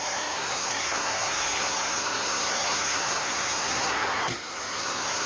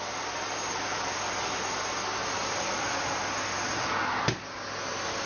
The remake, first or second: first